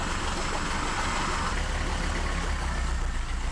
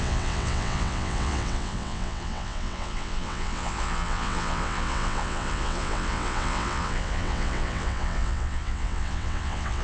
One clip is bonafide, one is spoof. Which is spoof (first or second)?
second